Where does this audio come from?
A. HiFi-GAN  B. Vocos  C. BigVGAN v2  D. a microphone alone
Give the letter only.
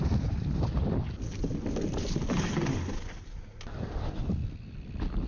D